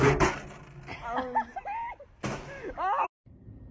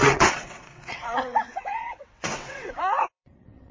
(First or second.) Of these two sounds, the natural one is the first